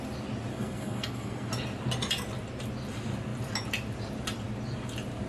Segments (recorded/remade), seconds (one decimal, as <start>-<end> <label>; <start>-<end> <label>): 0.0-0.5 recorded; 0.5-1.5 remade; 1.5-5.3 recorded